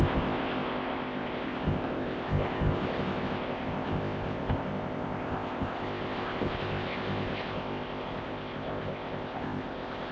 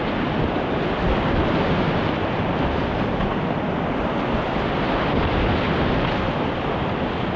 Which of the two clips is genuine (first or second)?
second